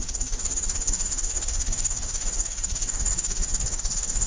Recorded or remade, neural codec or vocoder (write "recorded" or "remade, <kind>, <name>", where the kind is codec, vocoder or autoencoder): remade, codec, DAC